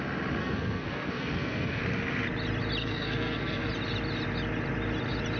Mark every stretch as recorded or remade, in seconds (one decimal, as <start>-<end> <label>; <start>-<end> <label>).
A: 0.0-0.4 recorded; 0.4-1.8 remade; 1.8-2.8 recorded; 2.8-3.7 remade; 3.7-5.4 recorded